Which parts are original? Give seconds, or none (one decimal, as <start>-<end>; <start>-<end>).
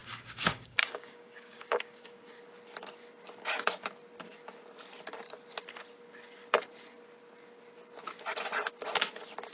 2.4-9.5